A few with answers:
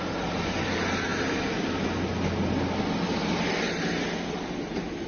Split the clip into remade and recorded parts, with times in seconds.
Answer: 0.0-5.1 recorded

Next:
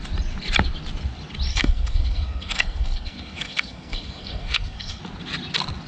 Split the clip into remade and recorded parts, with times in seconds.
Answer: 0.0-1.5 recorded; 1.5-5.0 remade; 5.0-5.9 recorded

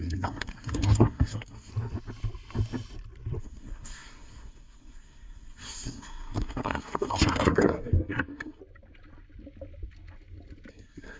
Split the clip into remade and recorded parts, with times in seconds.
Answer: 0.0-1.7 remade; 1.7-3.4 recorded; 3.4-8.6 remade; 8.6-10.7 recorded; 10.7-11.2 remade

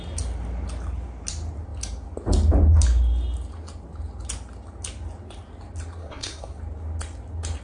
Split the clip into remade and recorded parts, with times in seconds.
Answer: 0.0-6.0 recorded; 6.0-6.6 remade; 6.6-7.6 recorded

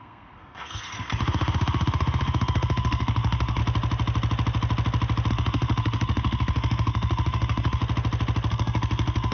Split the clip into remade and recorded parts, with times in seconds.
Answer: 0.0-3.6 remade; 3.6-5.3 recorded; 5.3-7.8 remade; 7.8-8.5 recorded; 8.5-9.3 remade

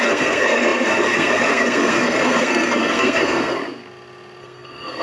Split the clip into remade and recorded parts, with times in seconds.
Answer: 0.0-3.6 remade; 3.6-4.4 recorded; 4.4-5.0 remade

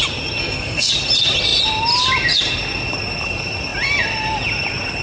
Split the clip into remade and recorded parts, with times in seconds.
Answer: 0.0-0.4 recorded; 0.4-0.9 remade; 0.9-5.0 recorded

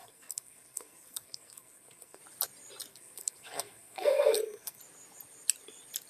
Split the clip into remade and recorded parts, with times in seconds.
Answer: 0.0-2.2 remade; 2.2-2.9 recorded; 2.9-4.8 remade; 4.8-6.1 recorded